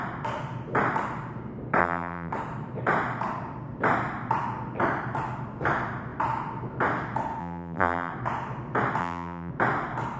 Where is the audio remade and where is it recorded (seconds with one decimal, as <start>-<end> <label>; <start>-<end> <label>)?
0.0-1.8 recorded; 1.8-2.3 remade; 2.3-7.4 recorded; 7.4-8.1 remade; 8.1-9.0 recorded; 9.0-9.5 remade; 9.5-10.2 recorded